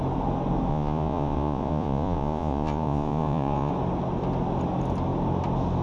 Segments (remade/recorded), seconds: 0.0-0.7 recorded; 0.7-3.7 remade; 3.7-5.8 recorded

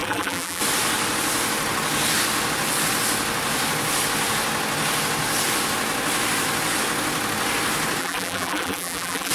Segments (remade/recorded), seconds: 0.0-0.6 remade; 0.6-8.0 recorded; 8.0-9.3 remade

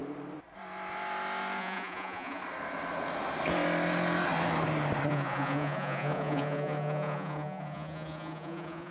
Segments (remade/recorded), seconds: 0.0-1.6 recorded; 1.6-2.4 remade; 2.4-5.1 recorded; 5.1-8.9 remade

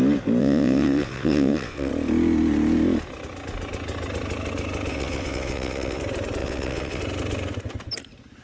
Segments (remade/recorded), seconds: 0.0-0.4 recorded; 0.4-1.9 remade; 1.9-4.9 recorded; 4.9-6.0 remade; 6.0-6.4 recorded; 6.4-7.0 remade; 7.0-8.4 recorded

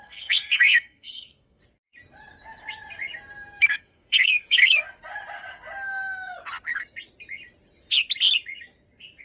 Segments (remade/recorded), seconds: 0.0-1.6 remade; 1.6-3.7 recorded; 3.7-4.6 remade; 4.6-9.2 recorded

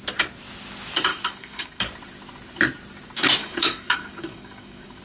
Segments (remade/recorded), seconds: 0.0-1.1 recorded; 1.1-1.8 remade; 1.8-3.4 recorded; 3.4-5.0 remade